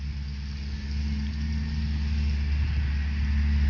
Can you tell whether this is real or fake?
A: real